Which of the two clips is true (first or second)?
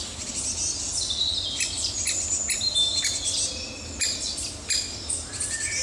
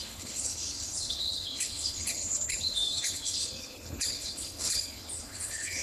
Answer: first